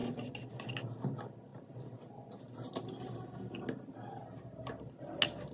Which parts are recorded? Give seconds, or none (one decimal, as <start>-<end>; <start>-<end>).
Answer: 0.0-5.5